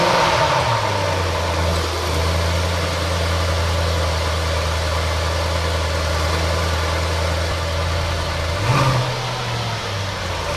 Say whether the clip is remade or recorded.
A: recorded